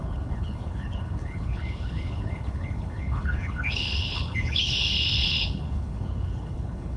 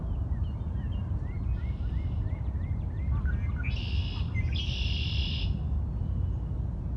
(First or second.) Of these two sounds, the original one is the second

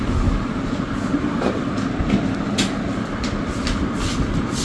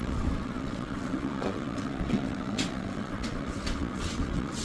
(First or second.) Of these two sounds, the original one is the first